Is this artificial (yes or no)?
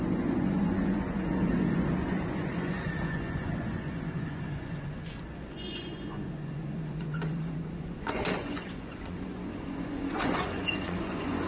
yes